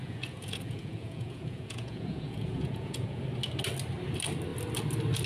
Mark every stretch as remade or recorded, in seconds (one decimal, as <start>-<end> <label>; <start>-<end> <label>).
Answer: 0.0-3.2 remade; 3.2-5.3 recorded

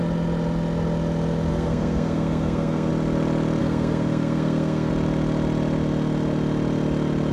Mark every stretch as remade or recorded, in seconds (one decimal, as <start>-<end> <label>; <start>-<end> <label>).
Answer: 0.0-1.5 recorded; 1.5-2.9 remade; 2.9-3.6 recorded; 3.6-4.9 remade; 4.9-7.3 recorded

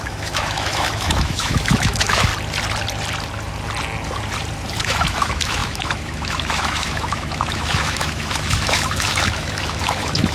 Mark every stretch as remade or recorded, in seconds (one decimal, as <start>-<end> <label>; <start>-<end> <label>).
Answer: 0.0-2.3 remade; 2.3-4.8 recorded; 4.8-10.3 remade

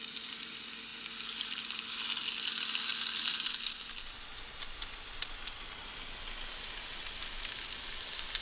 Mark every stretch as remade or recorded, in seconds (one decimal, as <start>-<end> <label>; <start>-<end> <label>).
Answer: 0.0-8.4 recorded